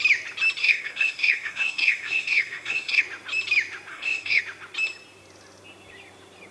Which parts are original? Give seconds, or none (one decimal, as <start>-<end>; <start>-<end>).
0.0-0.6; 3.0-3.9; 4.4-6.5

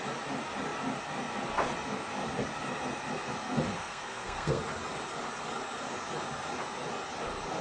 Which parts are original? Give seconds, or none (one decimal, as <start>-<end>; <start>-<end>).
0.0-3.7; 4.6-7.6

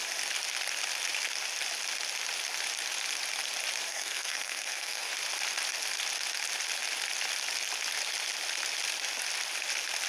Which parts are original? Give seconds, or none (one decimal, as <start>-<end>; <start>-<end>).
0.0-3.9; 5.1-10.1

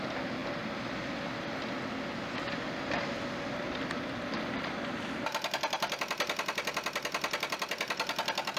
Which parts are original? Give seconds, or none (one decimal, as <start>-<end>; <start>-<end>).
0.0-8.6